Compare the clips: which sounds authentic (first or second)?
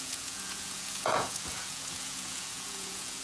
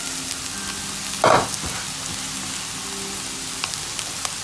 second